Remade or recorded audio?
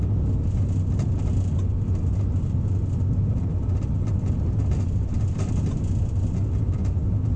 recorded